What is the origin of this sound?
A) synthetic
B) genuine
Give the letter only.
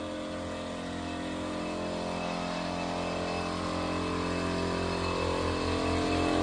B